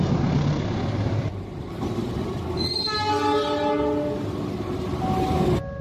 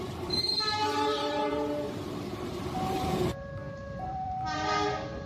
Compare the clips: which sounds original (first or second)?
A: first